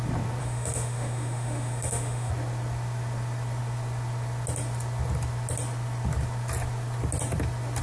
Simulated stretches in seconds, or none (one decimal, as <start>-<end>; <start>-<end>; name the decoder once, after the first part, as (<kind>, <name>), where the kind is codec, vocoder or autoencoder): 0.4-2.3 (autoencoder, DAC-VAE)